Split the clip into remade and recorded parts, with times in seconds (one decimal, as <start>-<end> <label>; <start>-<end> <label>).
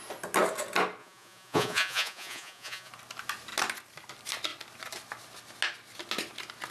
0.0-1.0 recorded; 1.0-2.9 remade; 2.9-6.7 recorded